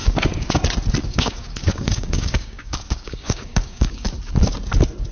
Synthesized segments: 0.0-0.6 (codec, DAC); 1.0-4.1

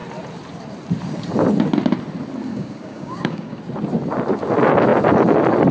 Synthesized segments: 2.5-3.6 (codec, DAC)

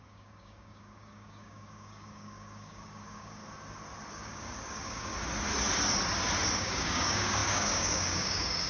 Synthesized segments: 0.0-3.4 (codec, DAC); 4.1-5.1; 6.5-8.7

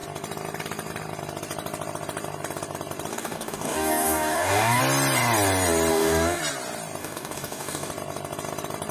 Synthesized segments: 3.1-4.8 (codec, DAC); 5.9-6.4; 7.0-7.9